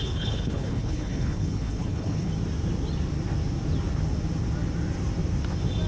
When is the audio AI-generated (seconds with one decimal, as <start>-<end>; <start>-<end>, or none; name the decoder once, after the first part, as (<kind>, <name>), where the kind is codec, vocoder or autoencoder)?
0.0-2.3 (codec, HILCodec)